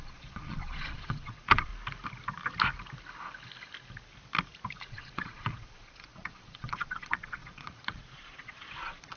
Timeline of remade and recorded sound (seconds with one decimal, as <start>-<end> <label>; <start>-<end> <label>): 0.0-1.7 remade; 1.7-4.9 recorded; 4.9-9.2 remade